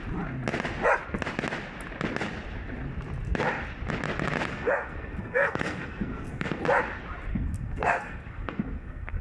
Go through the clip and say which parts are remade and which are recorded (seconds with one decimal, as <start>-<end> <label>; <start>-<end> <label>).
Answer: 0.0-4.5 recorded; 4.5-6.6 remade; 6.6-7.3 recorded; 7.3-9.2 remade